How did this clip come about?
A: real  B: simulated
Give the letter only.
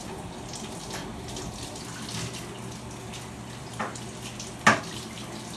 A